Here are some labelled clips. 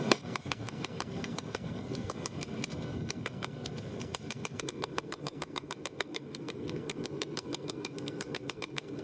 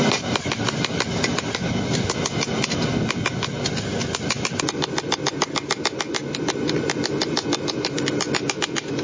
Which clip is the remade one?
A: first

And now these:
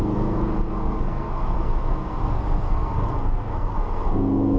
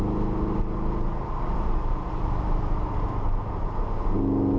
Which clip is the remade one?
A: first